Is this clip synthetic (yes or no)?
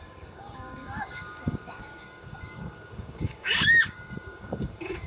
yes